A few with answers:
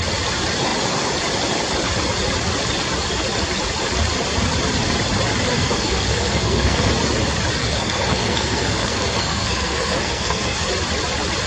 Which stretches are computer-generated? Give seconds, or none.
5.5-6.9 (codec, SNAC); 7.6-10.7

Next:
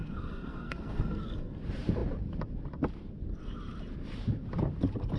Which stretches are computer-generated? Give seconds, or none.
0.0-1.6 (codec, SNAC)